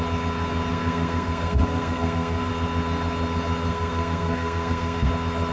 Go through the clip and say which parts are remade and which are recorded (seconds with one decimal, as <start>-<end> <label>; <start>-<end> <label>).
0.0-0.7 recorded; 0.7-2.5 remade; 2.5-3.7 recorded; 3.7-5.1 remade; 5.1-5.5 recorded